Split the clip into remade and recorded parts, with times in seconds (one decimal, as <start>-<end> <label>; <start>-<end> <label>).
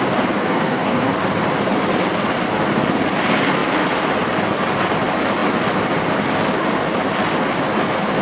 0.0-0.4 recorded; 0.4-1.1 remade; 1.1-8.2 recorded